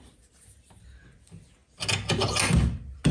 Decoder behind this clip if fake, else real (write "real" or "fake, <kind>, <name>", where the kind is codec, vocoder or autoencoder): real